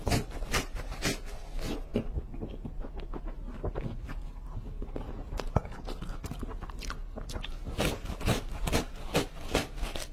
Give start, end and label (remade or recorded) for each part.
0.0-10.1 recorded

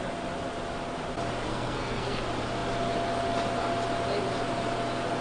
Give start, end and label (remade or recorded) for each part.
0.0-1.5 recorded; 1.5-2.2 remade; 2.2-5.2 recorded

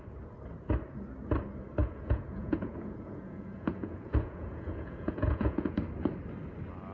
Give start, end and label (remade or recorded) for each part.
0.0-1.8 recorded; 1.8-5.8 remade; 5.8-6.9 recorded

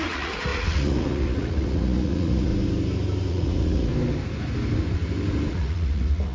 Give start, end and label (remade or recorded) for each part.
0.0-2.5 remade; 2.5-3.3 recorded; 3.3-3.9 remade; 3.9-5.5 recorded; 5.5-6.3 remade

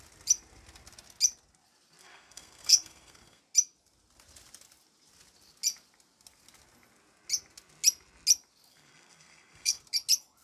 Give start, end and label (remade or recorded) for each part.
0.0-2.0 recorded; 2.0-3.4 remade; 3.4-8.7 recorded; 8.7-9.8 remade; 9.8-10.4 recorded